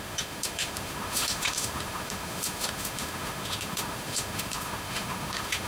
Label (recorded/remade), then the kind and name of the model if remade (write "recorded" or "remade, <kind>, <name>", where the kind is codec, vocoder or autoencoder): remade, autoencoder, DAC-VAE